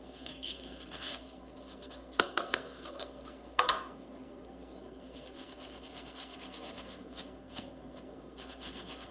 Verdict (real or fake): fake